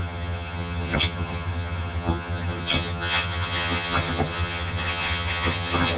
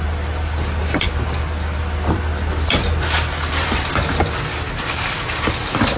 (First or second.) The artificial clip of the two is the first